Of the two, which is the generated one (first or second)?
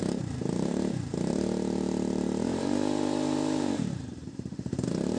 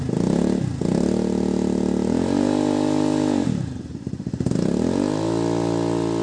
first